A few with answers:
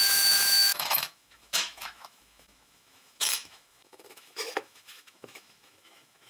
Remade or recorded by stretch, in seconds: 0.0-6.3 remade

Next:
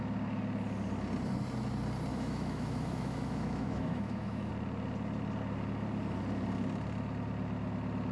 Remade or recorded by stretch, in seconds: 0.0-2.1 recorded; 2.1-4.5 remade; 4.5-8.1 recorded

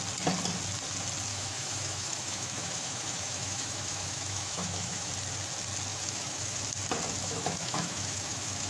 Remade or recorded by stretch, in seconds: 0.0-1.3 recorded; 1.3-5.1 remade; 5.1-5.9 recorded; 5.9-6.6 remade; 6.6-7.2 recorded; 7.2-8.7 remade

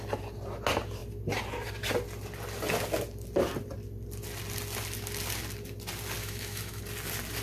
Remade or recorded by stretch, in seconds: 0.0-6.2 recorded; 6.2-6.8 remade; 6.8-7.4 recorded

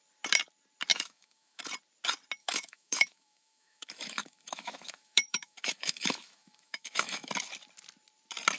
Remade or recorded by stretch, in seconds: 0.0-0.9 recorded; 0.9-1.6 remade; 1.6-2.4 recorded; 2.4-7.3 remade; 7.3-8.6 recorded

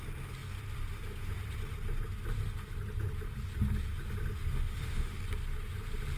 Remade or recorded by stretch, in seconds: 0.0-4.5 recorded; 4.5-5.2 remade; 5.2-6.2 recorded

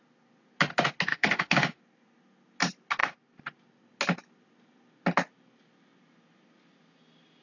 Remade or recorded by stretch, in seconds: 0.0-1.1 recorded; 1.1-1.8 remade; 1.8-7.4 recorded

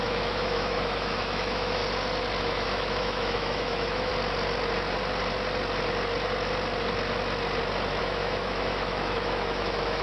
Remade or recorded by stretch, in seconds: 0.0-1.8 remade; 1.8-2.4 recorded; 2.4-4.1 remade; 4.1-8.0 recorded; 8.0-10.0 remade